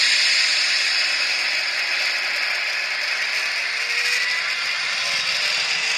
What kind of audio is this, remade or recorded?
recorded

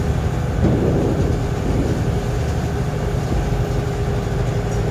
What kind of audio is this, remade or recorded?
recorded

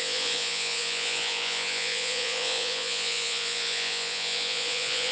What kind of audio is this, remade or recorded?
remade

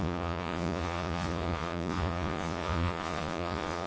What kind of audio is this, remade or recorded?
remade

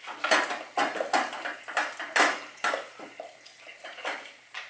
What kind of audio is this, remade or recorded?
recorded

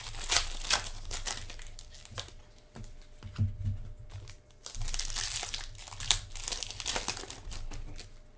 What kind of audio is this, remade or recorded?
recorded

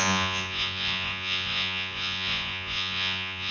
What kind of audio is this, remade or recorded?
remade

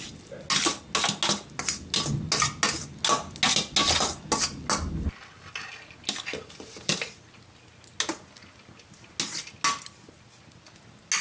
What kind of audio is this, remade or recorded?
recorded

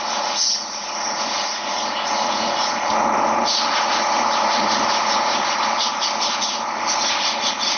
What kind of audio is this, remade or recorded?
remade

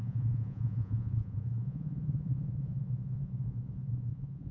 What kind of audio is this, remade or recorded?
remade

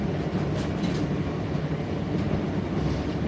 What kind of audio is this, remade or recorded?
recorded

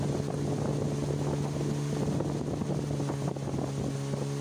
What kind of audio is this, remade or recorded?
recorded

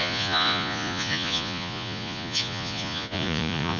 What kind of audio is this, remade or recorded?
remade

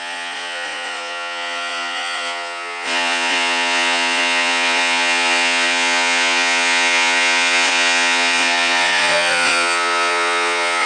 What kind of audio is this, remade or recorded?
remade